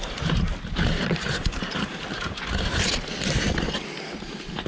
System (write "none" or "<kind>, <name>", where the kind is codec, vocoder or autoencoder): none